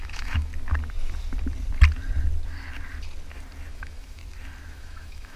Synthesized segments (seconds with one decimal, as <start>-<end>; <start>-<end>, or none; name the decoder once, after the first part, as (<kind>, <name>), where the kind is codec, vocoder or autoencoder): 0.0-0.5 (autoencoder, DAC-VAE); 3.7-4.2; 4.7-5.4